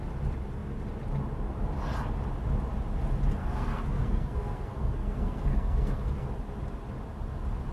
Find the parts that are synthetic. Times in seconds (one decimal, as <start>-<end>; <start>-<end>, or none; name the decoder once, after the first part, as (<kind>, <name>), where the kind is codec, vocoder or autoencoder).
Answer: 3.4-6.3 (codec, SNAC)